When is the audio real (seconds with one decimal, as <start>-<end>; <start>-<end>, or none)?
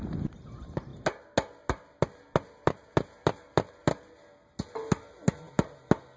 0.0-6.2